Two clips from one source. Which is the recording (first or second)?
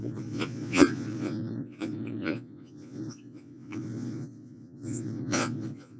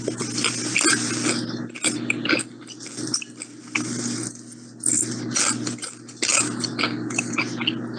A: second